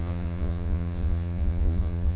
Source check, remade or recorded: remade